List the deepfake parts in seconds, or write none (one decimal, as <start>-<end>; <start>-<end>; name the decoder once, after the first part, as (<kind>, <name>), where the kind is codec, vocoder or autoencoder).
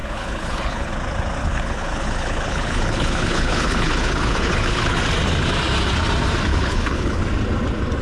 0.0-0.9 (codec, HILCodec); 1.4-5.0; 6.5-7.2